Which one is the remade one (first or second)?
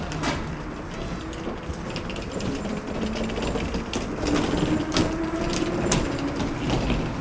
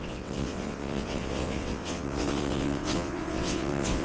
second